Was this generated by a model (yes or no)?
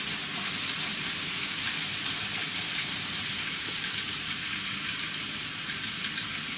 yes